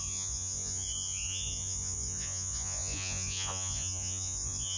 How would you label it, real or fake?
fake